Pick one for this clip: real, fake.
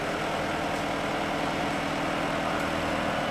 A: real